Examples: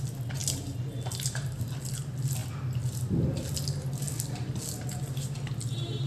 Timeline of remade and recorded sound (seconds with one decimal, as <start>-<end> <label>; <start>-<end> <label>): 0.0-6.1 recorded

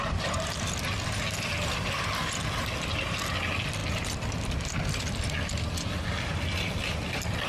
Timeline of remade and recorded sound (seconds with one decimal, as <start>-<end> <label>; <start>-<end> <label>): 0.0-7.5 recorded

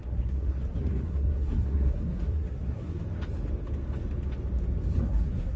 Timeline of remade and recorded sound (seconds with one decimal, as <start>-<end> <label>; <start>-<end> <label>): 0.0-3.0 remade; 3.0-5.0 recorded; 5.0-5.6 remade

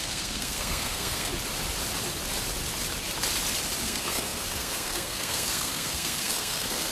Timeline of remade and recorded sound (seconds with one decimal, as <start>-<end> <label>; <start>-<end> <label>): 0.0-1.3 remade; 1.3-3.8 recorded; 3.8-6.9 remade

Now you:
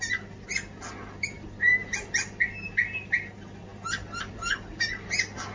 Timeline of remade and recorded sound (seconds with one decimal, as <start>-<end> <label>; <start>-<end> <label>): 0.0-5.5 recorded